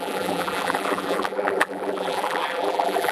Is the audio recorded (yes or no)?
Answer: no